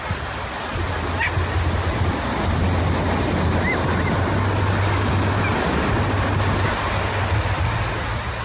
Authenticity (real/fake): real